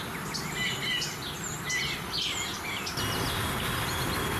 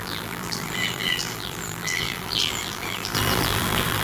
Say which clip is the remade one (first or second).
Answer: second